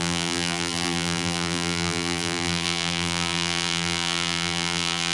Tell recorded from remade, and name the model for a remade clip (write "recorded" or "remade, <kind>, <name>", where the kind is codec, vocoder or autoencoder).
remade, vocoder, BigVGAN v2